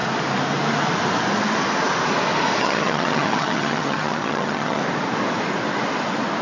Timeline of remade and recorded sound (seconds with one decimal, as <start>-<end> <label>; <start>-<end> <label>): 0.0-2.6 recorded; 2.6-4.8 remade; 4.8-6.4 recorded